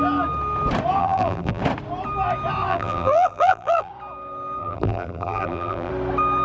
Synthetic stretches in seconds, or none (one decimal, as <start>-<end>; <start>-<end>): 1.0-1.6; 2.7-3.9; 4.6-5.9